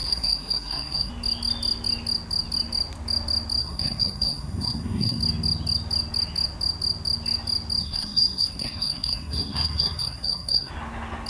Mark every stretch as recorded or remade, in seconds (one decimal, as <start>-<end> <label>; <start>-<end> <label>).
0.0-1.1 remade; 1.1-3.6 recorded; 3.6-5.2 remade; 5.2-7.8 recorded; 7.8-10.7 remade; 10.7-11.3 recorded